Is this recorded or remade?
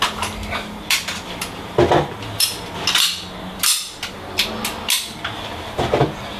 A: recorded